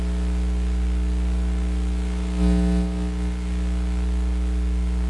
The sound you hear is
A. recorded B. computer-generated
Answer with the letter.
A